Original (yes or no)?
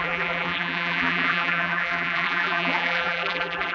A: no